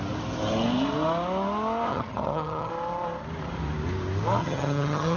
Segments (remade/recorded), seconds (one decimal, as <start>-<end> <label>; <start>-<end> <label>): 0.0-1.9 recorded; 1.9-2.7 remade; 2.7-4.4 recorded; 4.4-5.2 remade